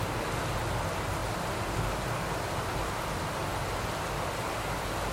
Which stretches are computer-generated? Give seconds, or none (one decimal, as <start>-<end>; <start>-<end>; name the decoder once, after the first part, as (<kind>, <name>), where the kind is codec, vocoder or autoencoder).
none